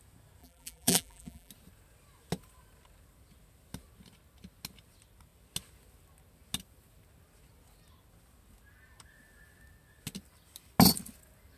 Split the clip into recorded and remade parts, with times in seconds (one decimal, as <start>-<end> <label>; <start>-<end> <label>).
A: 0.0-0.4 recorded; 0.4-1.5 remade; 1.5-11.6 recorded